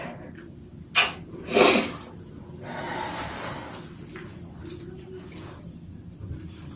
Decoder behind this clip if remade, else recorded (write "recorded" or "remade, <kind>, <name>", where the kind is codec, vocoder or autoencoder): recorded